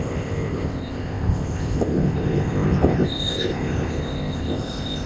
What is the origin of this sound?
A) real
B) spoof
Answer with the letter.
B